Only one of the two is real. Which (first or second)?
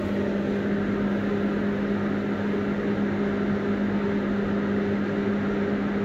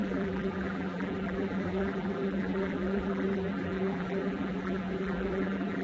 first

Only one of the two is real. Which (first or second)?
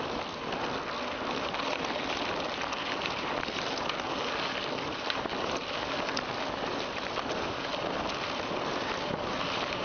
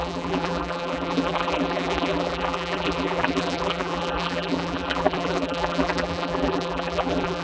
first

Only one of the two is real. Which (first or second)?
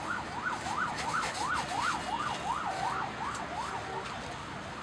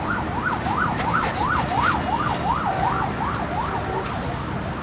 first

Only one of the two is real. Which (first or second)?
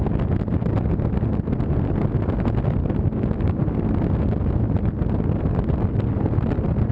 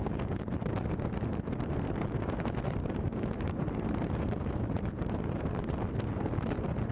first